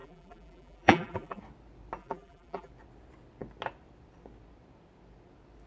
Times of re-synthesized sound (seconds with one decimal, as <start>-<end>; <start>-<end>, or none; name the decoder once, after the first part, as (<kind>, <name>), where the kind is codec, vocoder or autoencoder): 0.0-1.4 (vocoder, BigVGAN v2); 2.0-2.7